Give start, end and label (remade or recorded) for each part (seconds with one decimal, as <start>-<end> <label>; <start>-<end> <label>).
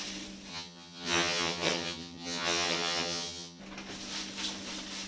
0.0-0.5 recorded; 0.5-3.6 remade; 3.6-5.1 recorded